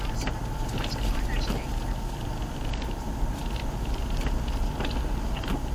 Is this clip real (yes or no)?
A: yes